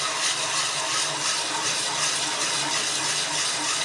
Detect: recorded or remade recorded